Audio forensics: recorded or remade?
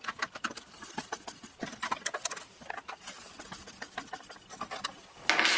recorded